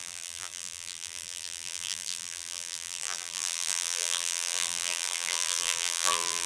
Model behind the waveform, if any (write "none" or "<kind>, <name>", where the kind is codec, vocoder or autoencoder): vocoder, BigVGAN v2